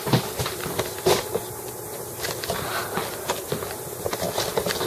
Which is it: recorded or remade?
recorded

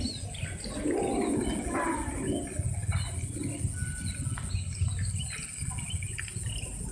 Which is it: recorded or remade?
recorded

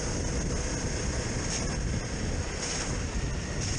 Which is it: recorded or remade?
recorded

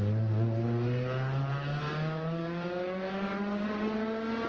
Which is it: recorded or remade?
recorded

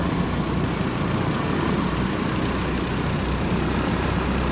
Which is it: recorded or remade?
recorded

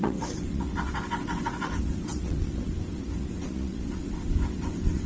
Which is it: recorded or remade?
remade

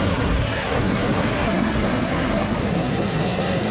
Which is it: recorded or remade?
remade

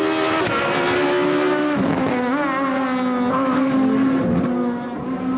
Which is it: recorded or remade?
recorded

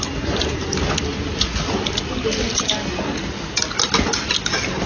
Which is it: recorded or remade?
recorded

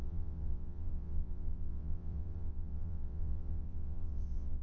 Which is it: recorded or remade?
remade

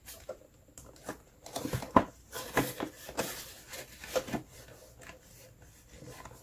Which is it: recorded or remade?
recorded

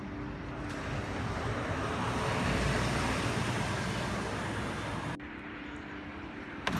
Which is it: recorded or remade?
recorded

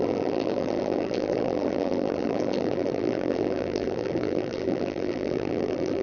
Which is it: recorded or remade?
remade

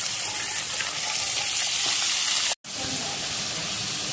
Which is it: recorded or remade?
recorded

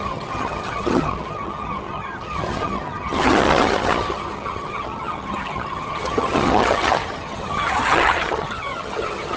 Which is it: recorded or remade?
remade